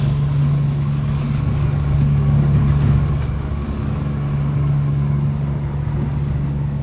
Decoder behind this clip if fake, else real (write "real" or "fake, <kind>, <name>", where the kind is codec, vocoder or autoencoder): fake, codec, DAC